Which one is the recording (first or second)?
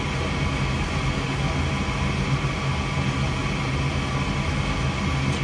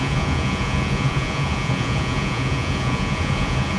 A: first